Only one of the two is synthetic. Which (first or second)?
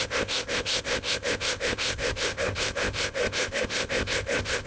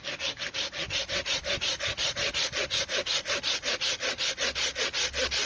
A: first